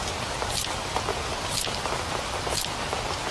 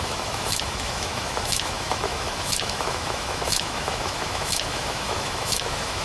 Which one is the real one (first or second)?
first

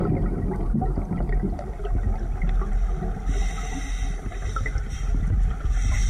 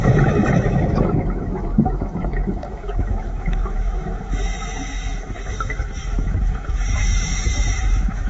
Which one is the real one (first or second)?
first